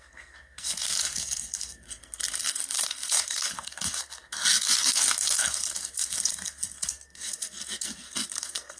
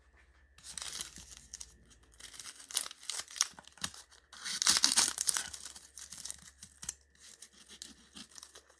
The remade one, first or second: first